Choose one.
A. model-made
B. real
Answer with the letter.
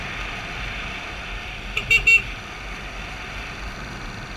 B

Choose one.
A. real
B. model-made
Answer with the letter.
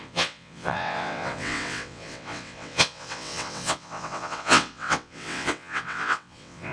B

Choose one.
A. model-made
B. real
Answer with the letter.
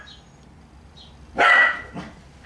B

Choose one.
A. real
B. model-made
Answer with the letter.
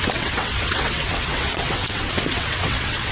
B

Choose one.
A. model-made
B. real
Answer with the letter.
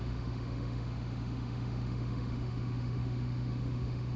A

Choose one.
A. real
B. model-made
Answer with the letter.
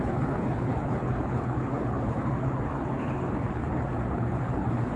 B